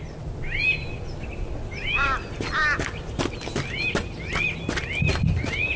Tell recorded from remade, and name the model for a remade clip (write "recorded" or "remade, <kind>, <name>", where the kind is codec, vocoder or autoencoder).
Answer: recorded